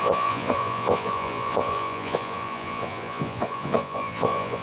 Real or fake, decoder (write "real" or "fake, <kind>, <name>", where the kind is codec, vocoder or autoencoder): fake, vocoder, Vocos